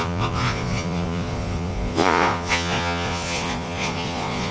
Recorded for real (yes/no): no